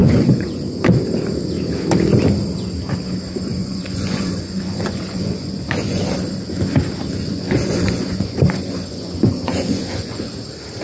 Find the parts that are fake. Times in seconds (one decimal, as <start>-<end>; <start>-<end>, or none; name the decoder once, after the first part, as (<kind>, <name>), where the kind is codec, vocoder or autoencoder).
0.0-0.8 (vocoder, Vocos); 3.5-6.1; 7.2-10.3